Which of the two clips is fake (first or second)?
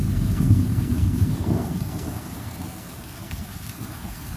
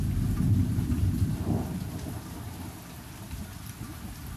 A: first